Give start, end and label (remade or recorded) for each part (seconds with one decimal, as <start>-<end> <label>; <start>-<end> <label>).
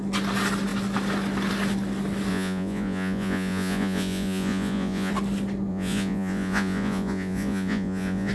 0.0-2.3 recorded; 2.3-5.1 remade; 5.1-5.7 recorded; 5.7-8.3 remade